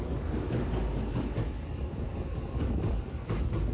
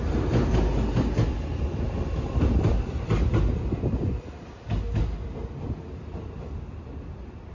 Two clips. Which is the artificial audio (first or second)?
first